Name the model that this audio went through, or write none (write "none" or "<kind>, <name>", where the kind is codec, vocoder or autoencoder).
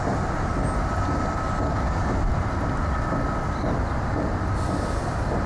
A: none